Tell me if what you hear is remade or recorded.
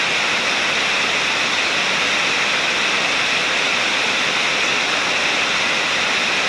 recorded